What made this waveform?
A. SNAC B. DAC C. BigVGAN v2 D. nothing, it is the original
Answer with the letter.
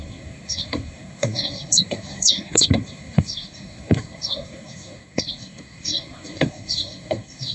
A